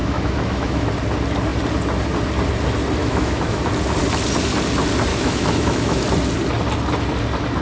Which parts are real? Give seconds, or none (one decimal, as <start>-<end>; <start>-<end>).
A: 0.9-3.0; 3.6-5.1; 6.0-7.6